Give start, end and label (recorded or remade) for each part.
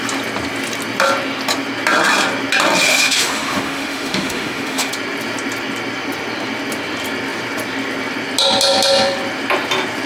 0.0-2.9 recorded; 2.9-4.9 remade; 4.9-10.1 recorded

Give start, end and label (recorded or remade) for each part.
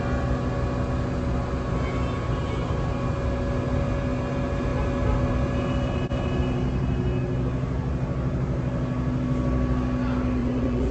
0.0-10.4 recorded; 10.4-10.9 remade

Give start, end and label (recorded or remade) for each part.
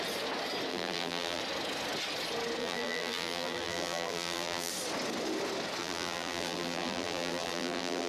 0.0-0.7 recorded; 0.7-1.4 remade; 1.4-2.6 recorded; 2.6-4.7 remade; 4.7-5.8 recorded; 5.8-8.1 remade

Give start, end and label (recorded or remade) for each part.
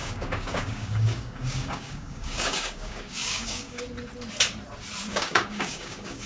0.0-3.8 remade; 3.8-5.1 recorded; 5.1-6.3 remade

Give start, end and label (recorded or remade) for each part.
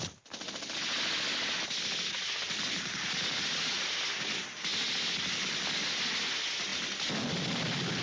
0.0-8.0 recorded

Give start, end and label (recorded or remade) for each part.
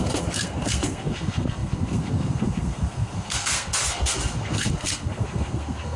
0.0-6.0 remade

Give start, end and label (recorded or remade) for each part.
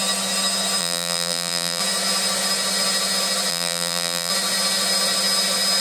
0.0-0.8 recorded; 0.8-1.8 remade; 1.8-3.5 recorded; 3.5-4.3 remade; 4.3-5.8 recorded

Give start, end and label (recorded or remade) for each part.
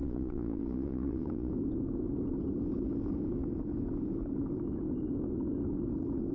0.0-1.5 remade; 1.5-6.3 recorded